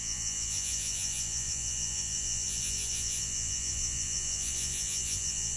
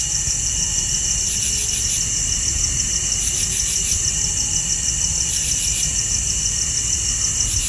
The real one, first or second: second